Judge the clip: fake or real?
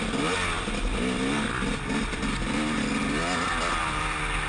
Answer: real